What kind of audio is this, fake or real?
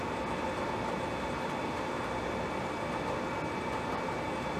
real